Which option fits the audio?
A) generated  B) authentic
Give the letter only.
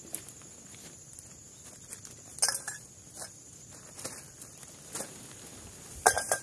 B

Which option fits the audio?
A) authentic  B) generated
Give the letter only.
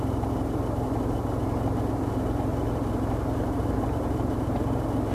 B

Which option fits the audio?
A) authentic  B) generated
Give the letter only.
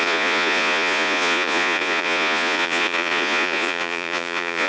B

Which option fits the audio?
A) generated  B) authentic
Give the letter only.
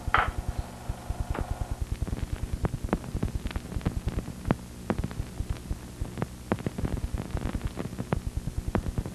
B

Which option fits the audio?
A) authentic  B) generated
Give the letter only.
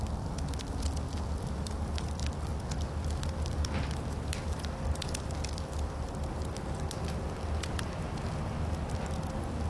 A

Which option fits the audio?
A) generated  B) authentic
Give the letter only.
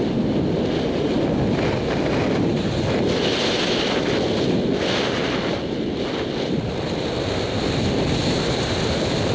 B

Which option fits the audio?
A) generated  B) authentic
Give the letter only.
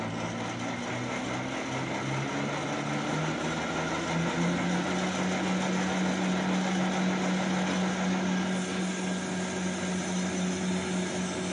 B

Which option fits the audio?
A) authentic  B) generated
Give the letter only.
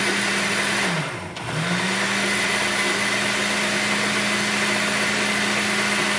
A